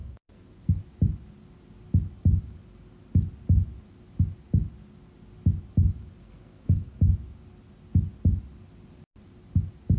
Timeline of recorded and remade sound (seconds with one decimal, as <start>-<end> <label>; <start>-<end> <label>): 0.0-0.8 remade; 0.8-6.2 recorded; 6.2-7.0 remade; 7.0-10.0 recorded